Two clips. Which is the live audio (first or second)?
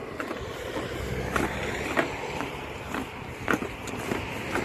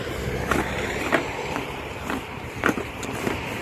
first